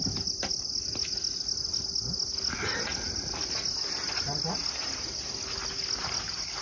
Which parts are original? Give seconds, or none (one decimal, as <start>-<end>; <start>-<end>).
0.0-6.6